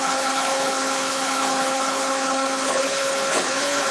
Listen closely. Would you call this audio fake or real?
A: fake